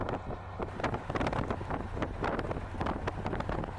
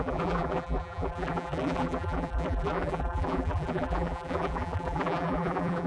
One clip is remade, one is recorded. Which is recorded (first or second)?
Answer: first